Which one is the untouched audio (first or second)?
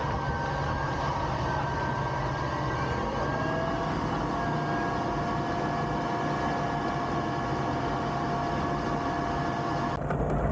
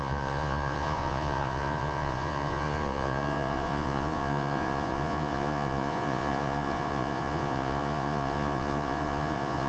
first